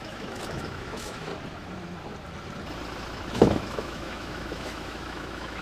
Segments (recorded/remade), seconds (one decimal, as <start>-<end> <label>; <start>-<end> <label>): 0.0-1.3 remade; 1.3-3.3 recorded; 3.3-5.6 remade